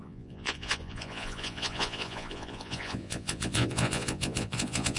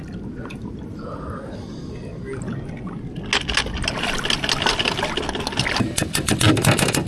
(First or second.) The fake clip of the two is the first